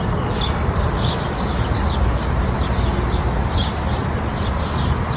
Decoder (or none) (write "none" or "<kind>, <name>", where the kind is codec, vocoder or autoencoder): none